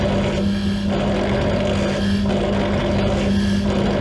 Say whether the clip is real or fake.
real